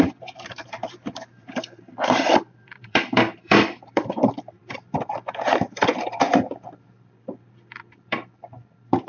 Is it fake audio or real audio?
fake